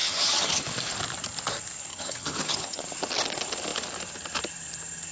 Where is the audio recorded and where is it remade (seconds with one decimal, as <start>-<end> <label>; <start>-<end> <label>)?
0.0-0.6 remade; 0.6-1.9 recorded; 1.9-2.8 remade; 2.8-5.1 recorded